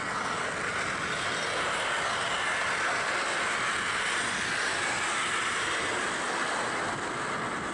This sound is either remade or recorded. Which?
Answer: recorded